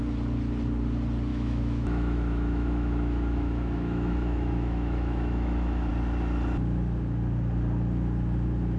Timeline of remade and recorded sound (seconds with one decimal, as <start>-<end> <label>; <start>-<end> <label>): 0.0-1.3 recorded; 1.3-5.9 remade; 5.9-8.8 recorded